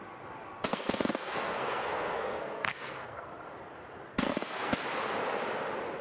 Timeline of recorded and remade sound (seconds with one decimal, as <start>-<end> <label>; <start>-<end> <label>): 0.0-0.7 recorded; 0.7-3.3 remade; 3.3-4.1 recorded; 4.1-4.7 remade; 4.7-6.0 recorded